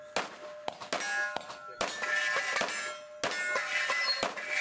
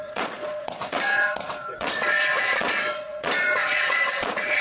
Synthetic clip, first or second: second